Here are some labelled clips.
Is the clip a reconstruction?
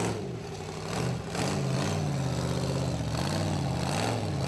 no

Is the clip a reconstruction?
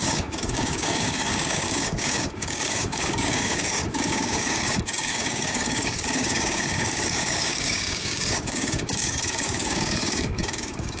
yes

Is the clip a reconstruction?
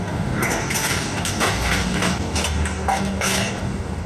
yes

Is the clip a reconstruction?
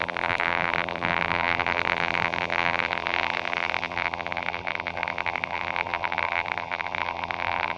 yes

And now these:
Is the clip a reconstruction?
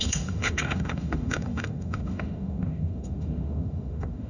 yes